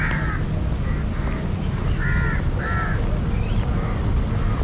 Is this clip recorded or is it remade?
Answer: recorded